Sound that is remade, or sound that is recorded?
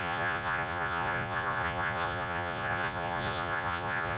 remade